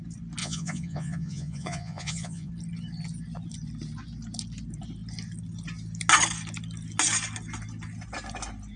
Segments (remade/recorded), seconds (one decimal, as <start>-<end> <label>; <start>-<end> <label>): 0.0-0.4 recorded; 0.4-2.5 remade; 2.5-8.8 recorded

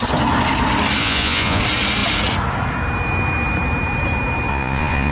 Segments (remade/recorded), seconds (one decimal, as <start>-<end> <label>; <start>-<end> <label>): 0.0-1.0 recorded; 1.0-1.6 remade; 1.6-4.5 recorded; 4.5-5.1 remade

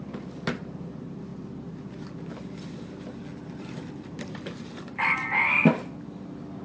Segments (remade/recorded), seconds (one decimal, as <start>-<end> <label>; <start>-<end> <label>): 0.0-1.3 remade; 1.3-3.6 recorded; 3.6-4.7 remade; 4.7-6.6 recorded

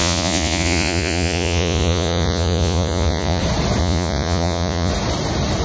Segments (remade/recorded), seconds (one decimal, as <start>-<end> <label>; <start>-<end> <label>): 0.0-3.4 remade; 3.4-3.8 recorded; 3.8-4.9 remade; 4.9-5.6 recorded

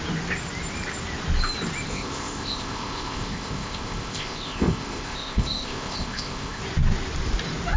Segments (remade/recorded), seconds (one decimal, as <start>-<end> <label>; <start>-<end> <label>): 0.0-1.9 recorded; 1.9-6.6 remade; 6.6-7.8 recorded

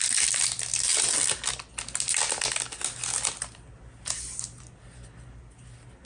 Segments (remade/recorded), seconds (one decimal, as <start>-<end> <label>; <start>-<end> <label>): 0.0-6.1 recorded